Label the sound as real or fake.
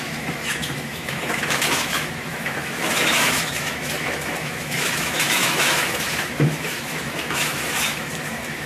fake